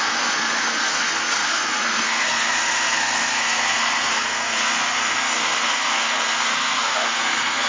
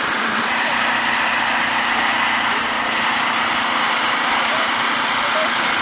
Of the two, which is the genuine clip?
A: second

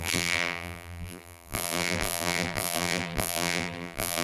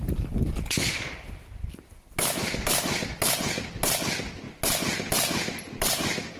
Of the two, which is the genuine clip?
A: second